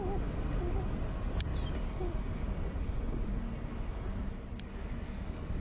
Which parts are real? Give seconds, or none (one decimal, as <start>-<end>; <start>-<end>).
0.0-5.6